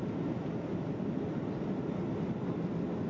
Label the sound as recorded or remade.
recorded